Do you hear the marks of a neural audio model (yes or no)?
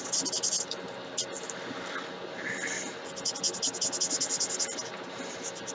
no